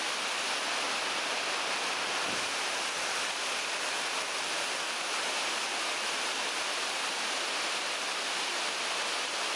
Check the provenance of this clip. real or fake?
real